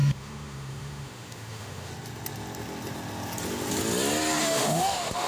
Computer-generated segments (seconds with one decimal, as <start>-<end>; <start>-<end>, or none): 0.0-1.9; 4.4-5.3